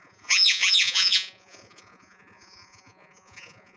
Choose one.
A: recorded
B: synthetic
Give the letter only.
B